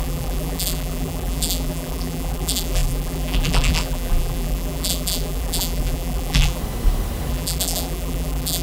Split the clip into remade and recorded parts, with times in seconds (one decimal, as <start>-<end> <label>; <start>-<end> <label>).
0.0-6.6 remade; 6.6-7.3 recorded; 7.3-8.6 remade

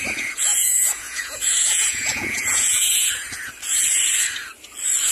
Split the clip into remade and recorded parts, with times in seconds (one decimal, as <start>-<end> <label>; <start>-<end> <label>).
0.0-0.5 recorded; 0.5-3.1 remade; 3.1-5.1 recorded